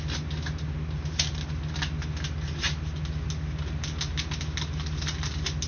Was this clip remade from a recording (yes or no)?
no